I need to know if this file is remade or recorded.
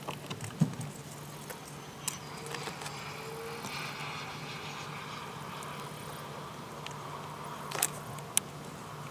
recorded